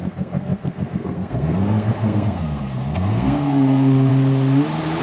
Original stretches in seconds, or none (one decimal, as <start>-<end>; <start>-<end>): 4.1-5.0